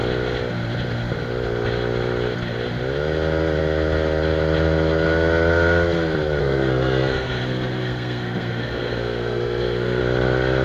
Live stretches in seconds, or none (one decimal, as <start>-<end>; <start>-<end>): 0.0-6.4; 10.0-10.6